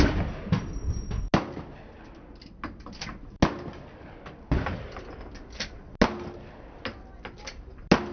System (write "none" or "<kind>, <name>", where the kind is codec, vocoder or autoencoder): none